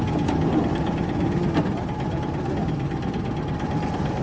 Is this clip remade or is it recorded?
recorded